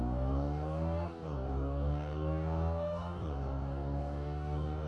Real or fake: fake